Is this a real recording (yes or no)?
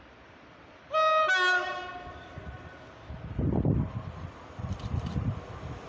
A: yes